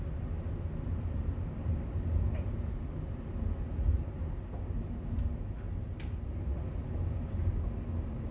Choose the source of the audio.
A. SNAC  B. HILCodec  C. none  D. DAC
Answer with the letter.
C